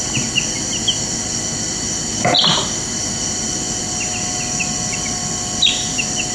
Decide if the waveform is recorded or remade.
recorded